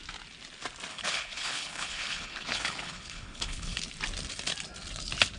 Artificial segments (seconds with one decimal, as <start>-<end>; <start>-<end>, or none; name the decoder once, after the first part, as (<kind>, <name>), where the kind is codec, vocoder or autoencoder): 0.9-3.8 (codec, HILCodec)

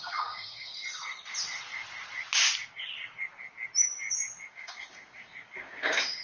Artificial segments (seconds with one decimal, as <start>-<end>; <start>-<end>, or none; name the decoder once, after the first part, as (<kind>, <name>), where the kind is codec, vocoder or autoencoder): 0.0-0.8 (codec, DAC); 4.5-6.2

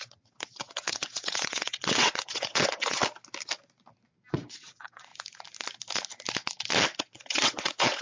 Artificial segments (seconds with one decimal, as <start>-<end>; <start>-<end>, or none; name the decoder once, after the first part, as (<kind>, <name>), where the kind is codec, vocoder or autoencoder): 0.0-3.0 (vocoder, WaveNeXt); 4.3-5.1; 7.0-8.0

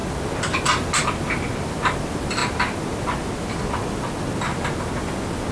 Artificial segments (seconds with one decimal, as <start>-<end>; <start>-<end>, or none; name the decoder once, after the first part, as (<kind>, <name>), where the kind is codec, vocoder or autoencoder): none

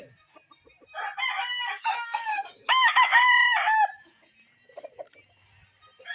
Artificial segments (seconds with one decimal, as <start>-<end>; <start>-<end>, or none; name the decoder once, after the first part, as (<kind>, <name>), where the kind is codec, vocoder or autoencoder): 1.5-3.2 (codec, DAC)

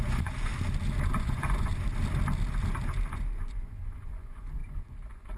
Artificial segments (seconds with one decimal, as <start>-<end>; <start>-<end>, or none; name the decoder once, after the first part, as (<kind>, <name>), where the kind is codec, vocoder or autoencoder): 0.0-0.5 (vocoder, Vocos); 1.1-1.7; 3.1-5.4